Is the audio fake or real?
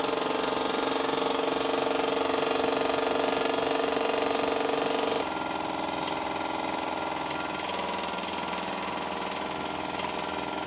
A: real